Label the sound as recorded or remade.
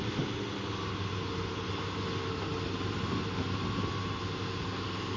recorded